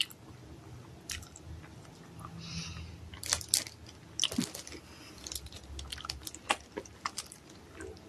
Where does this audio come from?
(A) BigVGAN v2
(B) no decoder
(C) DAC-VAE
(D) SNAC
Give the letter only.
B